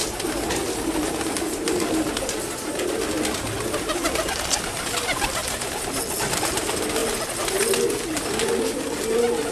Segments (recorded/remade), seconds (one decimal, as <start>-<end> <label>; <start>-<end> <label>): 0.0-9.5 recorded